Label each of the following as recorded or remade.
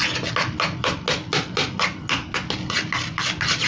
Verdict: recorded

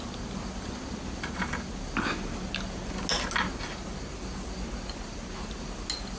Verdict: recorded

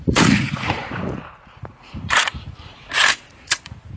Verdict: remade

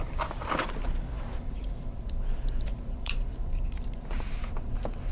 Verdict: remade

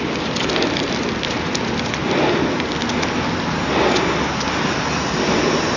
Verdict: recorded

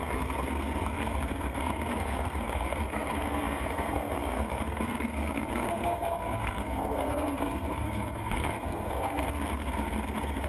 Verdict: remade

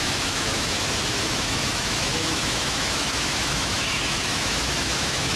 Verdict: remade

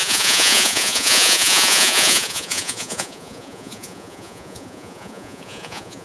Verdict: remade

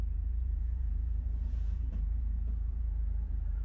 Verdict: remade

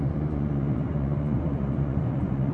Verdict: remade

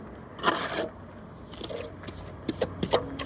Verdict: recorded